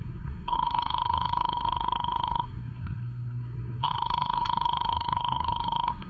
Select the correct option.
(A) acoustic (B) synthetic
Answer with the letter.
B